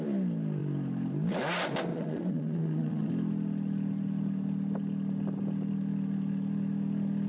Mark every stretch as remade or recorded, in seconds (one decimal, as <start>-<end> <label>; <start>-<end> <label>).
0.0-1.9 recorded; 1.9-3.1 remade; 3.1-7.3 recorded